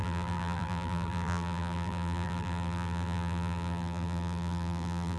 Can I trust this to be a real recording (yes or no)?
no